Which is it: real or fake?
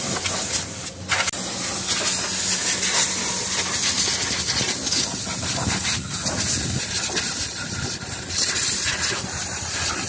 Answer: real